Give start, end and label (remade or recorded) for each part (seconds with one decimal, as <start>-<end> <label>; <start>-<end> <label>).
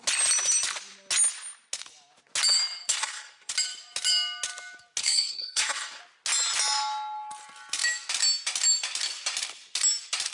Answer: 0.0-2.9 recorded; 2.9-3.5 remade; 3.5-5.0 recorded; 5.0-6.0 remade; 6.0-10.3 recorded